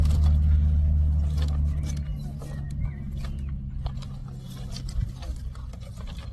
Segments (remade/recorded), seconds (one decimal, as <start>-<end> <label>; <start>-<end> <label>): 0.0-6.3 recorded